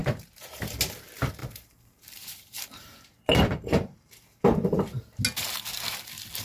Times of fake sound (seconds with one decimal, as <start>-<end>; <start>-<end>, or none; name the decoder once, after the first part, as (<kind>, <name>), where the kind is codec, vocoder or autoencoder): 0.0-0.7 (vocoder, BigVGAN v2); 1.4-5.2